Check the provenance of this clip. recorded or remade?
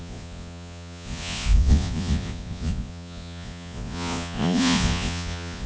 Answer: remade